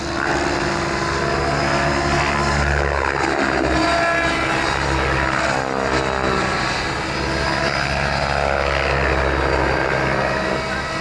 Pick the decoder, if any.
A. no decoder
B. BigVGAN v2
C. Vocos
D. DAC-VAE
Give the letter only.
A